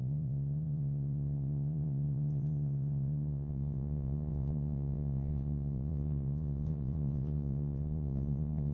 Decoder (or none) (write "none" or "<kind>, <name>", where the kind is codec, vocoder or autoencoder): vocoder, Vocos